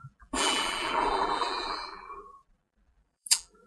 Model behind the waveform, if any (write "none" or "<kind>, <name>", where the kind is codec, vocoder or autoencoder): vocoder, BigVGAN v2